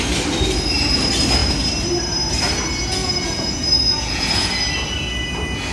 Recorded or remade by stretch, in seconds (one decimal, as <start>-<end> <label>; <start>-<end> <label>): 0.0-3.0 recorded; 3.0-4.5 remade; 4.5-5.7 recorded